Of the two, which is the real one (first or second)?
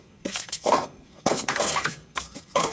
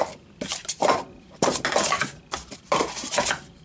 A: second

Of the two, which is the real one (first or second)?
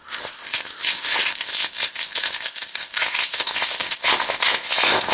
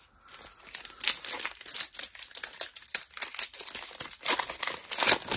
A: second